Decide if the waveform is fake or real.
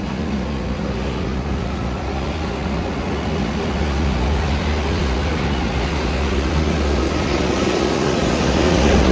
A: fake